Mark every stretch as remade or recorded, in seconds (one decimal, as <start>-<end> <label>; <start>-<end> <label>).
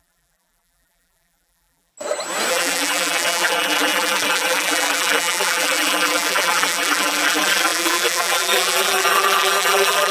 0.0-1.9 remade; 1.9-2.5 recorded; 2.5-10.1 remade